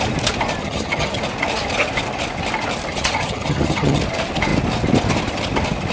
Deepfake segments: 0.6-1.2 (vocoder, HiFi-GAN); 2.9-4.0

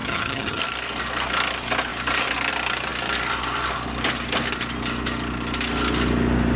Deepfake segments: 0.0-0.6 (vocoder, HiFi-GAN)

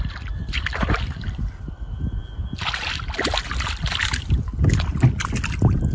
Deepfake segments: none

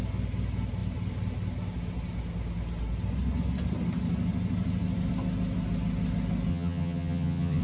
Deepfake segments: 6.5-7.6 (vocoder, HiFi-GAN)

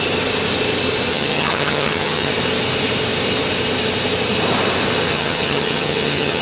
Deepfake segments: 1.1-2.3 (vocoder, HiFi-GAN); 5.1-6.4